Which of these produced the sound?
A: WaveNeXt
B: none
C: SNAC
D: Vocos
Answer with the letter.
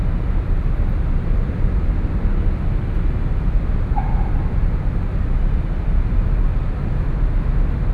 B